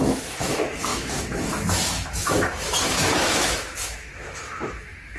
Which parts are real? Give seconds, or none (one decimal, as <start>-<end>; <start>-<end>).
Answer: none